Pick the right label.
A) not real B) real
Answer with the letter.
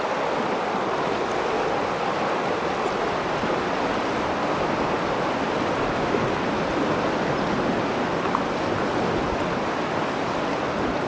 B